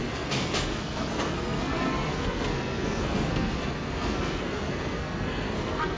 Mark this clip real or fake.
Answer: fake